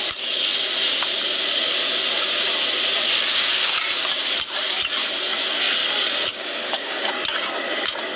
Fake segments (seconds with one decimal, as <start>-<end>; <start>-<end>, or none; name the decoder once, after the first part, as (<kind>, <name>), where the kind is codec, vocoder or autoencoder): 3.3-3.8 (codec, DAC); 5.8-7.1